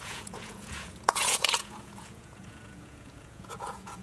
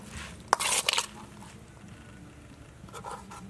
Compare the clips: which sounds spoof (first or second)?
first